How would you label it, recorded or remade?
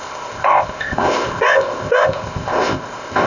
remade